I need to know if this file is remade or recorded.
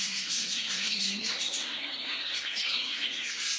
remade